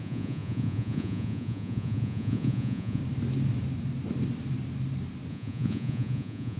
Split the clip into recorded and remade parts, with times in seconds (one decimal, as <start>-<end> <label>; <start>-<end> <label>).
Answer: 0.0-3.0 remade; 3.0-5.3 recorded; 5.3-6.6 remade

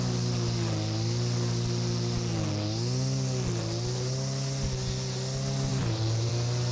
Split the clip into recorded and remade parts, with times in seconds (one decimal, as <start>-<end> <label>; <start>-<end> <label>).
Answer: 0.0-5.7 recorded; 5.7-6.3 remade; 6.3-6.7 recorded

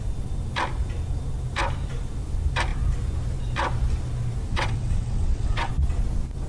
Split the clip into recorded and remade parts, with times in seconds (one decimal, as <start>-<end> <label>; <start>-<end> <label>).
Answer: 0.0-4.5 recorded; 4.5-5.7 remade; 5.7-6.5 recorded

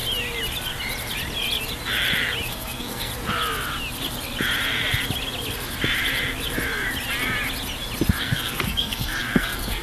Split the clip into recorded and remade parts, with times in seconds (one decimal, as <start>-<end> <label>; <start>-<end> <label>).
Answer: 0.0-2.5 recorded; 2.5-3.1 remade; 3.1-8.2 recorded; 8.2-9.8 remade

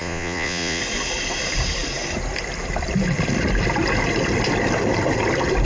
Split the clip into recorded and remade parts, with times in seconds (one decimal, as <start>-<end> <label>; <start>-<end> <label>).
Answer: 0.0-0.8 remade; 0.8-5.6 recorded